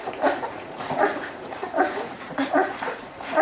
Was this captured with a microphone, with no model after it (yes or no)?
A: no